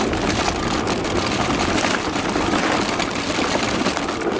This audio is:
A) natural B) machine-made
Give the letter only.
A